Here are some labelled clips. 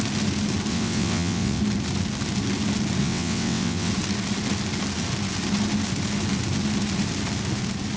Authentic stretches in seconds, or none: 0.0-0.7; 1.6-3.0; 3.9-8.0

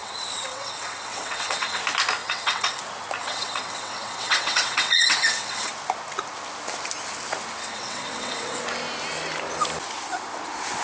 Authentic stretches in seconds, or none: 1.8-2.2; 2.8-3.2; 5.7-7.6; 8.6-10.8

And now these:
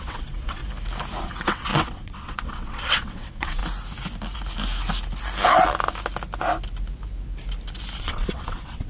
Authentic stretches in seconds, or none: 0.6-1.2; 3.6-8.0

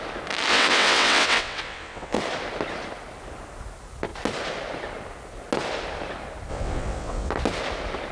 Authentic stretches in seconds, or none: 0.0-0.5; 2.2-6.5; 7.3-8.1

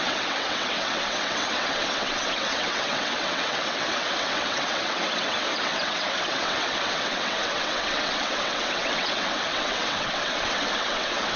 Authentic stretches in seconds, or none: none

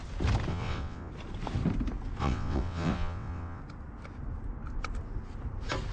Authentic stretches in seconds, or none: 0.0-0.5; 1.1-2.2; 3.6-5.9

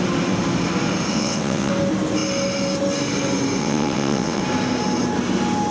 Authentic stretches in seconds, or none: 0.0-1.1; 1.7-3.6; 4.4-5.7